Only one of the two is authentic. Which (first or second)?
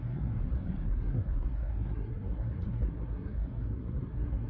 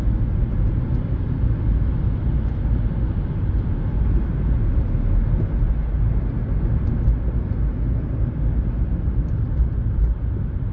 second